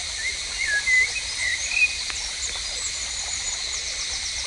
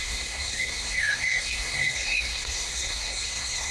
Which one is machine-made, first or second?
second